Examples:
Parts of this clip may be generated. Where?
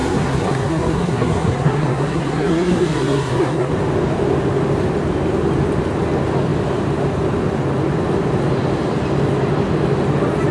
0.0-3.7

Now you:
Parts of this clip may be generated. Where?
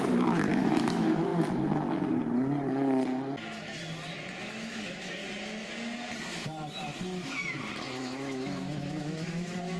0.0-1.3; 4.4-5.2; 8.0-9.8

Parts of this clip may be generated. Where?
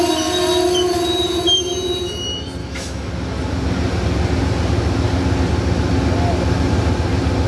2.6-3.1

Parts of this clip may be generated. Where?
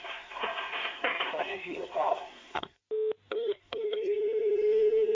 0.0-2.8; 3.3-5.1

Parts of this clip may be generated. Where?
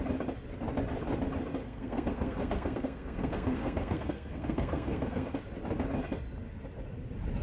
1.6-5.4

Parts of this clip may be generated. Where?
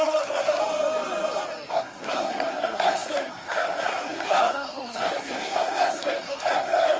0.0-0.6; 1.7-7.0